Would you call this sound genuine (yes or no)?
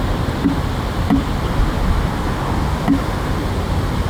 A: yes